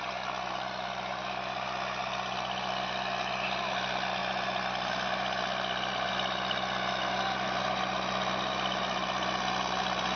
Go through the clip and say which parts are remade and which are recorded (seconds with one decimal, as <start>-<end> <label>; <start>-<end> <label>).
0.0-10.2 recorded